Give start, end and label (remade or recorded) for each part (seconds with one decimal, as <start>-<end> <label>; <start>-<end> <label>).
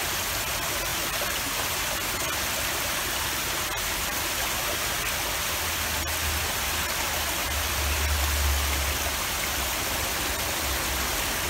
0.0-11.5 recorded